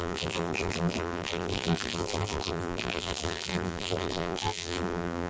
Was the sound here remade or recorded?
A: remade